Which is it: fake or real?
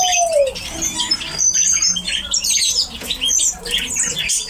real